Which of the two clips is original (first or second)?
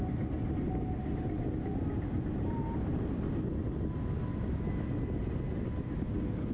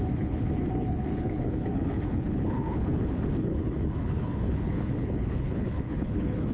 first